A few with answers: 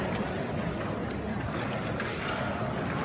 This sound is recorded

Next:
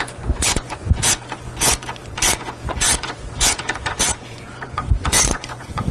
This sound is remade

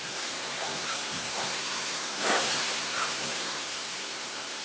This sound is remade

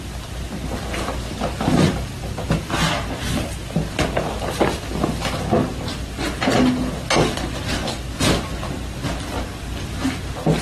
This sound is recorded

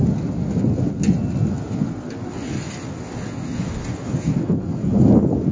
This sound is recorded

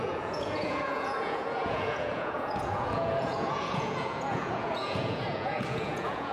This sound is remade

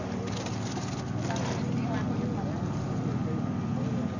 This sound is recorded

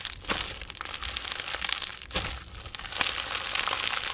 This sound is recorded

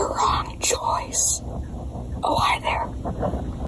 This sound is recorded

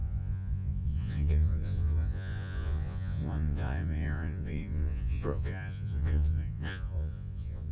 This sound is remade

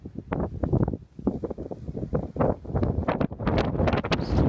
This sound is recorded